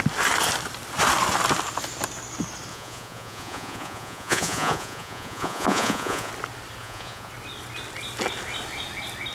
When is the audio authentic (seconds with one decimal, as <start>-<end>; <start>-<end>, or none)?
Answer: 0.0-2.7; 6.3-6.8; 7.3-9.3